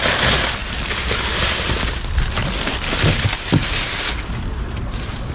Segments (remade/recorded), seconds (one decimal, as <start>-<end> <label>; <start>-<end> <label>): 0.0-0.6 recorded; 0.6-2.2 remade; 2.2-5.3 recorded